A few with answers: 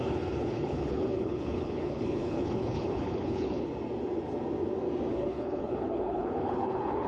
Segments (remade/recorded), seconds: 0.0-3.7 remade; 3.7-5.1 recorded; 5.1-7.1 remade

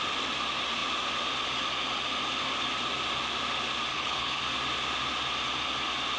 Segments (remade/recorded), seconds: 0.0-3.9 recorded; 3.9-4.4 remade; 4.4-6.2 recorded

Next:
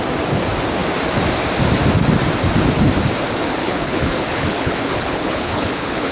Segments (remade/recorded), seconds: 0.0-3.6 recorded; 3.6-6.1 remade

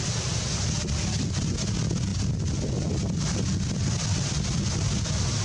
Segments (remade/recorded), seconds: 0.0-5.4 recorded

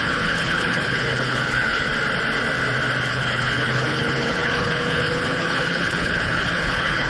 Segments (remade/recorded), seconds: 0.0-1.9 remade; 1.9-3.1 recorded; 3.1-7.1 remade

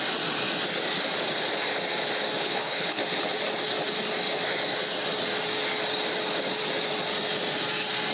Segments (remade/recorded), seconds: 0.0-2.4 recorded; 2.4-3.0 remade; 3.0-8.1 recorded

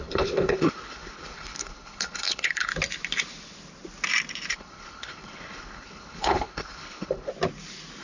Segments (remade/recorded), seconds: 0.0-2.7 remade; 2.7-4.5 recorded; 4.5-7.3 remade; 7.3-8.0 recorded

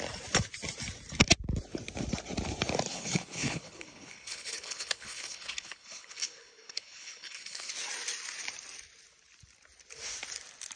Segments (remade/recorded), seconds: 0.0-2.9 recorded; 2.9-7.7 remade; 7.7-10.8 recorded